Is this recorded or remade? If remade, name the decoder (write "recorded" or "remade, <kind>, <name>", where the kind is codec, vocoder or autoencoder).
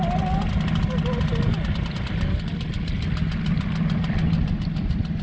recorded